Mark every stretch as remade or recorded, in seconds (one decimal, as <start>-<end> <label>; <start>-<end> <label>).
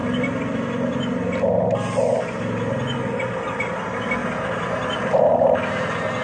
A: 0.0-4.2 recorded; 4.2-5.3 remade; 5.3-6.2 recorded